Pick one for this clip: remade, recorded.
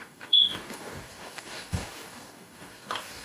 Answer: remade